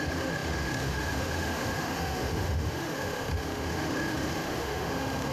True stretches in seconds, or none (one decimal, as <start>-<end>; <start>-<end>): none